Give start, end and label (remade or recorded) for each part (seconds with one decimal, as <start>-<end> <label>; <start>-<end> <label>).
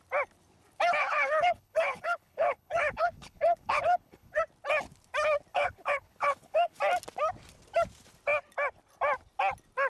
0.0-1.0 recorded; 1.0-4.4 remade; 4.4-5.5 recorded; 5.5-6.8 remade; 6.8-9.9 recorded